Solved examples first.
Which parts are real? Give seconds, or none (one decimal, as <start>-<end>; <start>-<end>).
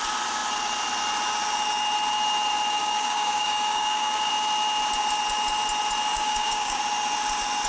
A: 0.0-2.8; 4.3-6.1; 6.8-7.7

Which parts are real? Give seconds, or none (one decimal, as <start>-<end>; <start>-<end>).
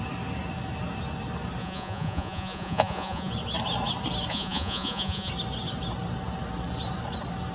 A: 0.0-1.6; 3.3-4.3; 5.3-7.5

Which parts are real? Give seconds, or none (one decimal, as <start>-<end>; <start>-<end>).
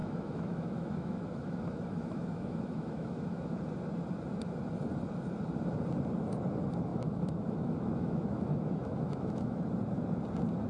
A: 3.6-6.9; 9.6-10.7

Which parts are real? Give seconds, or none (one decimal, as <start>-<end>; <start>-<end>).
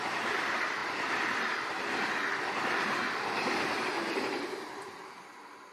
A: 0.0-0.8; 2.1-5.7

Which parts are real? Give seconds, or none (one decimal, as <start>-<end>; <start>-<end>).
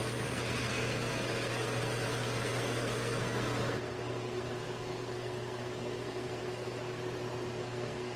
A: 7.0-7.6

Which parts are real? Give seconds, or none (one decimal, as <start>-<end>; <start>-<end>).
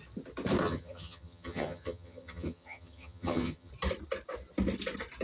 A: 0.0-0.6; 3.7-5.2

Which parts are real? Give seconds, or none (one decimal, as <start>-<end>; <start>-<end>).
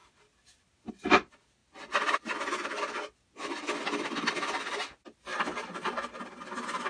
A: 0.0-6.9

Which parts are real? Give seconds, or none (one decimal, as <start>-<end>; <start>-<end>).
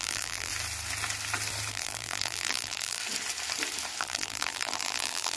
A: 0.5-1.7; 3.0-4.0